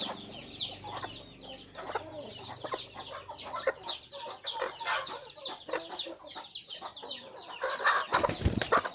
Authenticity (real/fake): real